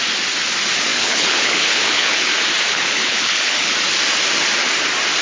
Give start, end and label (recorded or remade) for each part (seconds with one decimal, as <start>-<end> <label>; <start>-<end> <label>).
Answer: 0.0-0.9 recorded; 0.9-2.3 remade; 2.3-2.7 recorded; 2.7-3.7 remade; 3.7-5.2 recorded